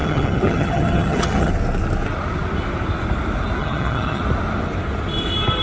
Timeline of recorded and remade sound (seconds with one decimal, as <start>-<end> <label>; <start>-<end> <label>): 0.0-1.5 remade; 1.5-3.6 recorded; 3.6-4.2 remade; 4.2-5.6 recorded